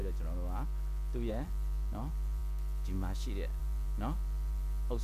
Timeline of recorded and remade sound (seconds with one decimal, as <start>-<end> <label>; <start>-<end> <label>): 0.0-1.3 recorded; 1.3-2.4 remade; 2.4-3.6 recorded; 3.6-5.0 remade